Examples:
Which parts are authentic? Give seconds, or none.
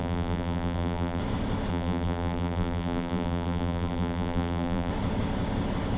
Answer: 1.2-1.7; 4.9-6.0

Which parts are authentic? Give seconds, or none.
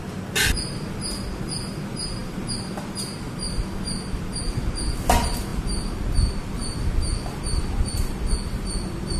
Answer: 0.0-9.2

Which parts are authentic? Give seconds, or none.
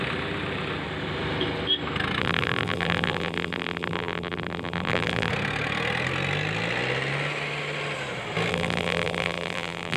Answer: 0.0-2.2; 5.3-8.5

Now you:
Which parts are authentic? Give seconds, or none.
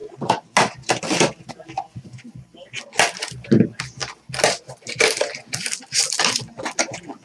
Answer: 0.0-7.2